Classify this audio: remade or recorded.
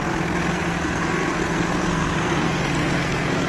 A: remade